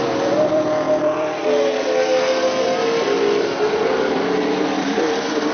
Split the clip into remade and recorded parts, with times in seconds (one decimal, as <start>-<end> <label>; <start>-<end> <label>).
0.0-1.4 remade; 1.4-4.7 recorded; 4.7-5.5 remade